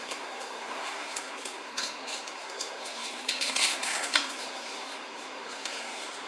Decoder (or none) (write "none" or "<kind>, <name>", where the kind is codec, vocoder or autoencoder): codec, SNAC